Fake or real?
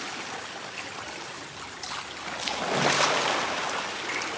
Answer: real